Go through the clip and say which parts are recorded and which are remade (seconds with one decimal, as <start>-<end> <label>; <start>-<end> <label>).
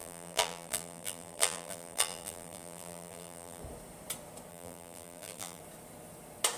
0.0-3.6 remade; 3.6-4.5 recorded; 4.5-5.6 remade; 5.6-6.6 recorded